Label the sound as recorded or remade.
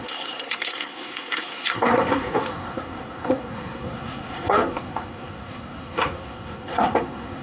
remade